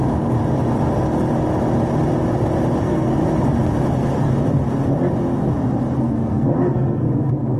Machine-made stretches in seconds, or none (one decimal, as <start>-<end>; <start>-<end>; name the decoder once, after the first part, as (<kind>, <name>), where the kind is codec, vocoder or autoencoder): 2.8-3.2 (codec, SNAC); 3.9-4.3; 6.0-7.6